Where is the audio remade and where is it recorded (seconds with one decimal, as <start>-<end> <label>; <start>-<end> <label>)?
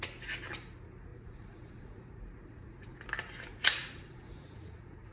0.0-1.1 recorded; 1.1-3.0 remade; 3.0-3.5 recorded; 3.5-5.1 remade